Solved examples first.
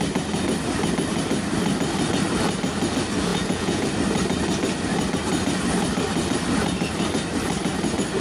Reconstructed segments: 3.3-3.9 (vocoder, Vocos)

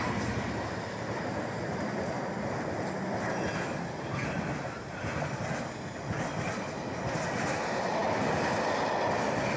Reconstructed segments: none

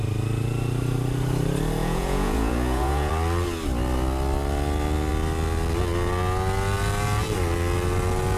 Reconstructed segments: 1.8-3.1 (vocoder, Vocos)